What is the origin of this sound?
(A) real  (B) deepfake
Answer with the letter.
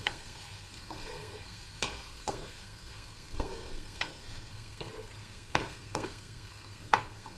B